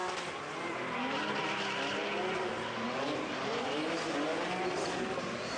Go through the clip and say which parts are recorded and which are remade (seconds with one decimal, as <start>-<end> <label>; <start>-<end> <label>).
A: 0.0-5.6 recorded